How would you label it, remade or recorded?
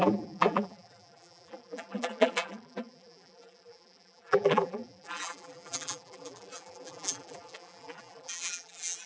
remade